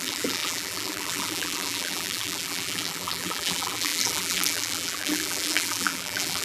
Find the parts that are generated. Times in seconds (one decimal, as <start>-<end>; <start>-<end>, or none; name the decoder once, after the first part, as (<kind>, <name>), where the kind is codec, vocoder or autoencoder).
0.0-6.4 (vocoder, BigVGAN v2)